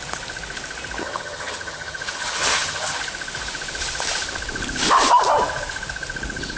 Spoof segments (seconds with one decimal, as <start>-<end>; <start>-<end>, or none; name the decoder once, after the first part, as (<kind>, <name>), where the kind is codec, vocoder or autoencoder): 1.0-3.0 (vocoder, HiFi-GAN)